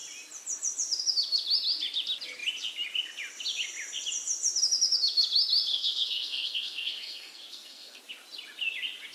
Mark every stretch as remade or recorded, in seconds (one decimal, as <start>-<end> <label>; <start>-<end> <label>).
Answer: 0.0-5.7 recorded; 5.7-8.0 remade; 8.0-9.1 recorded